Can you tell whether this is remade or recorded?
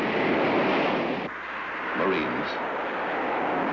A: recorded